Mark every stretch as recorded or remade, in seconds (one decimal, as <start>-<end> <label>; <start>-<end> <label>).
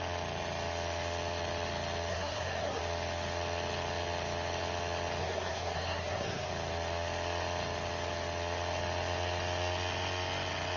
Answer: 0.0-2.1 recorded; 2.1-2.8 remade; 2.8-5.2 recorded; 5.2-6.5 remade; 6.5-10.8 recorded